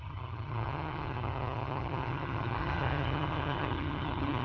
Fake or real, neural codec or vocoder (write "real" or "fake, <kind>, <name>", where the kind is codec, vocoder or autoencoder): fake, vocoder, HiFi-GAN